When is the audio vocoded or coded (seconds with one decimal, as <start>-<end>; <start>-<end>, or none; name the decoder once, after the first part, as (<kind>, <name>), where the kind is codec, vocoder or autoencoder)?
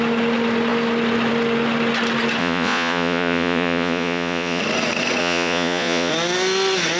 2.4-4.6 (vocoder, Vocos); 5.2-6.1